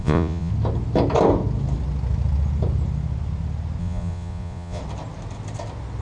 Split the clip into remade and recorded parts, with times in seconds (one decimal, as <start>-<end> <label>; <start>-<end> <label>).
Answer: 0.0-0.5 remade; 0.5-3.8 recorded; 3.8-4.8 remade; 4.8-6.0 recorded